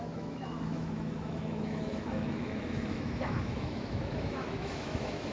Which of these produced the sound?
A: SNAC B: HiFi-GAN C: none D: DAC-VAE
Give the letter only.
D